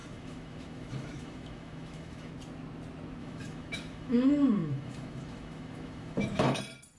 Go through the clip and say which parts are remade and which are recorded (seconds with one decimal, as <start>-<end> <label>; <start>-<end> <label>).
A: 0.0-2.3 remade; 2.3-3.2 recorded; 3.2-6.6 remade; 6.6-7.0 recorded